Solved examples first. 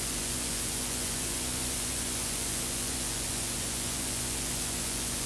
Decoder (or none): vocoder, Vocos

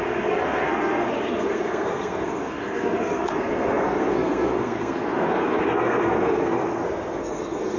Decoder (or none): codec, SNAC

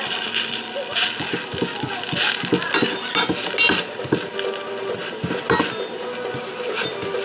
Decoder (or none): none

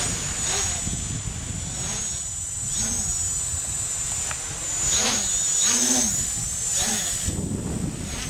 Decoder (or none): none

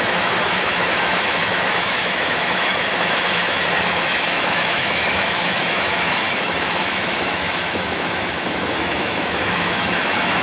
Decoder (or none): autoencoder, DAC-VAE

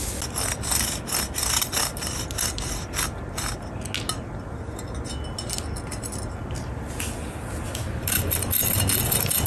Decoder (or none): none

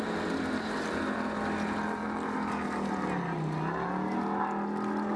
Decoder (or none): none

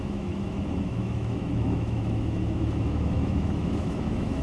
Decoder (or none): autoencoder, DAC-VAE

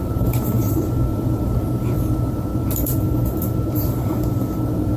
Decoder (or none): vocoder, BigVGAN v2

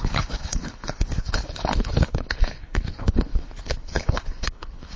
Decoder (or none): codec, HILCodec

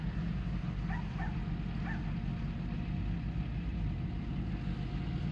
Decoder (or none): none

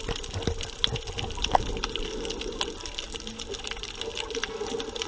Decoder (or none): none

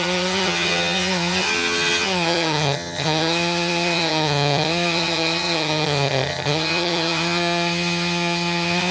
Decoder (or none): vocoder, HiFi-GAN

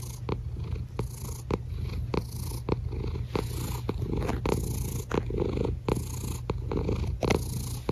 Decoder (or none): none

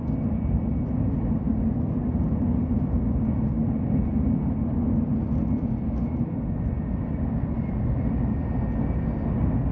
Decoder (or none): none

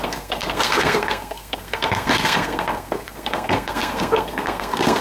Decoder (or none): codec, SNAC